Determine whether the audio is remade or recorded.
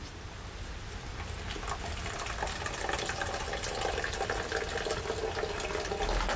recorded